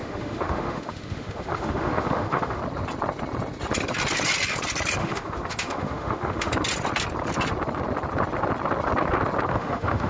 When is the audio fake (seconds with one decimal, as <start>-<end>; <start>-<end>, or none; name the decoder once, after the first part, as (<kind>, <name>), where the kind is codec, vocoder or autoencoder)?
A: 0.0-2.6 (autoencoder, DAC-VAE); 5.0-6.5; 9.5-10.1